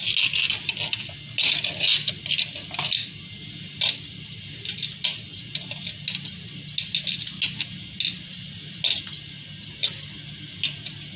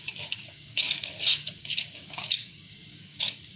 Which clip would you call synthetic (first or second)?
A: second